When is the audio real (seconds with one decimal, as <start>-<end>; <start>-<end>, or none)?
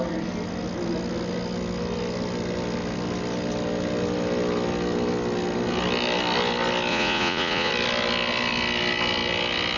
0.0-6.9; 7.7-9.8